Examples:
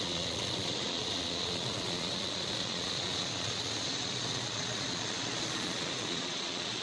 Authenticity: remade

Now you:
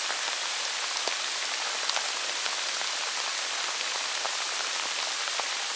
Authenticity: recorded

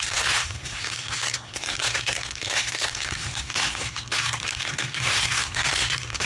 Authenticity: remade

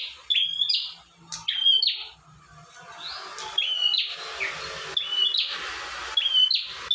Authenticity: recorded